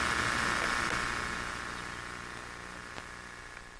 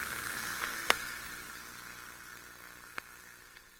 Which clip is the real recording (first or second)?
first